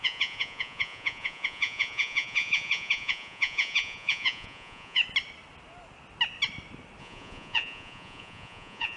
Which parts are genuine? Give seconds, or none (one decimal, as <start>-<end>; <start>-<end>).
5.0-7.0